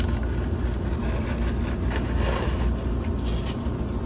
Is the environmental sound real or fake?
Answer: real